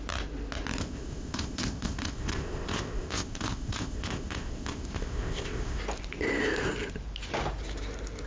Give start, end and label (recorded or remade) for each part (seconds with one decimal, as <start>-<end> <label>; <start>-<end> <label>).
0.0-0.8 recorded; 0.8-5.8 remade; 5.8-8.3 recorded